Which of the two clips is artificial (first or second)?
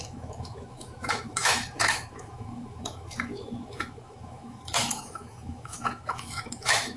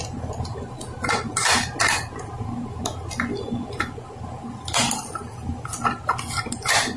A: first